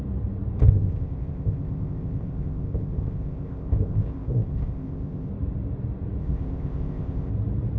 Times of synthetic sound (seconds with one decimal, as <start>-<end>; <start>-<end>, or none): 0.6-5.3; 6.2-7.3